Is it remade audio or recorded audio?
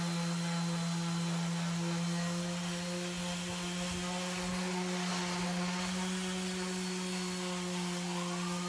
recorded